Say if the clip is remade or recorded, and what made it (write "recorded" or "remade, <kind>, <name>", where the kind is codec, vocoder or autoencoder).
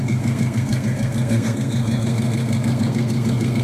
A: remade, codec, SNAC